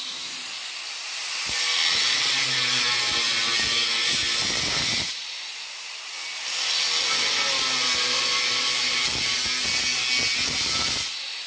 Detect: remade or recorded recorded